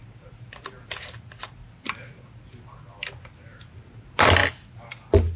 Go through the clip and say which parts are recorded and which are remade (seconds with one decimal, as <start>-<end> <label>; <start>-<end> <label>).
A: 0.0-5.4 recorded

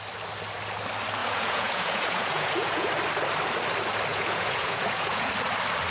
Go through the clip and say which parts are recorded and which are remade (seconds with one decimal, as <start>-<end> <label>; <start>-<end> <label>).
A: 0.0-1.2 recorded; 1.2-2.9 remade; 2.9-4.1 recorded; 4.1-5.3 remade; 5.3-5.9 recorded

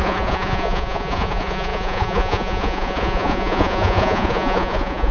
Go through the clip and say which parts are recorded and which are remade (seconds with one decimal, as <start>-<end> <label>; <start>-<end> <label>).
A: 0.0-5.1 remade

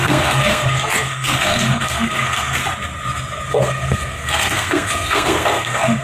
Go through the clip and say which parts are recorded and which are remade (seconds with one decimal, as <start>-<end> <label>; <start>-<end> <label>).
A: 0.0-2.6 remade; 2.6-3.5 recorded; 3.5-6.0 remade

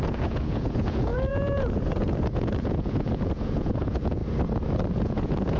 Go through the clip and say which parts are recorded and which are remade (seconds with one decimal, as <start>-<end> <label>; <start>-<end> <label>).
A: 0.0-4.2 remade; 4.2-4.9 recorded; 4.9-5.6 remade

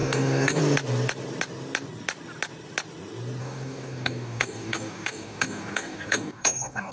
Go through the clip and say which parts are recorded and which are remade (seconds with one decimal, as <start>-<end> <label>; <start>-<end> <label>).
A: 0.0-0.6 remade; 0.6-3.4 recorded; 3.4-6.9 remade